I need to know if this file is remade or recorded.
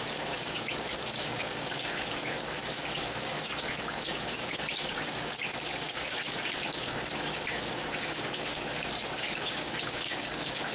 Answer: remade